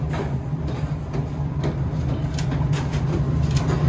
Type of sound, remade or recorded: recorded